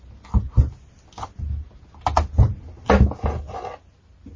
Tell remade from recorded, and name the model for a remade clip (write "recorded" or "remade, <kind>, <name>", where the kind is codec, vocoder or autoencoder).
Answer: recorded